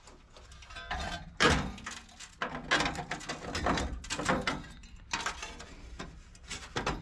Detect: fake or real real